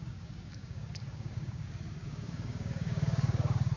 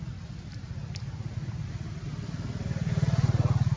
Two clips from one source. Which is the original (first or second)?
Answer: second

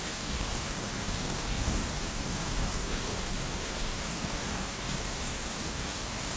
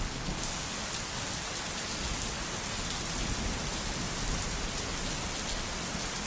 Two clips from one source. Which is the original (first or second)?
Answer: second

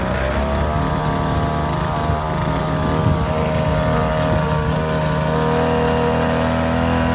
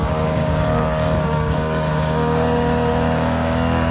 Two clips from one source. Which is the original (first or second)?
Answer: first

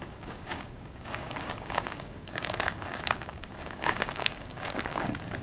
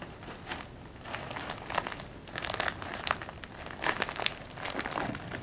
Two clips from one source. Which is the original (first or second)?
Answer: second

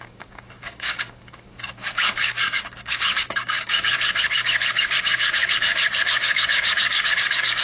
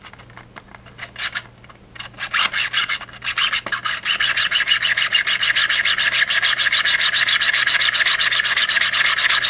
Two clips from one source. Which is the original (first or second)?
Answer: second